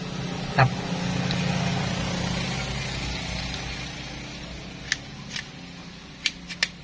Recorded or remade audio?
recorded